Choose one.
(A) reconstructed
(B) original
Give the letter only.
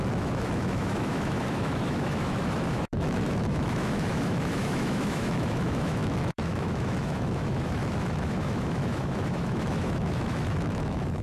A